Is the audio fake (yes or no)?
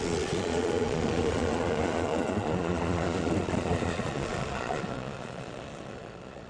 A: yes